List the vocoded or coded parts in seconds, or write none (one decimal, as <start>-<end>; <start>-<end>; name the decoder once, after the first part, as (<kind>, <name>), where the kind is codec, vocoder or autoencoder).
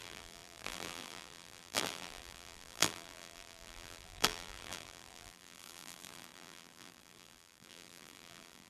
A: 0.0-8.7 (vocoder, BigVGAN v2)